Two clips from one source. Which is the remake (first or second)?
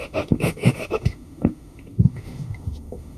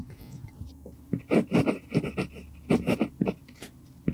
first